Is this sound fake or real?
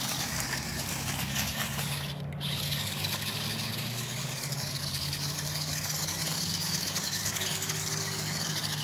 fake